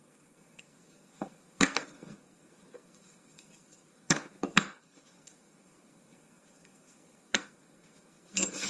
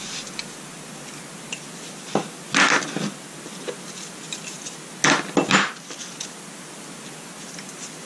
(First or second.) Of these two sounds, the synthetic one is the first